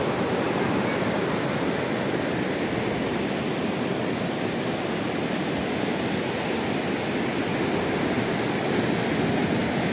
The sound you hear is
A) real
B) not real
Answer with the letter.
A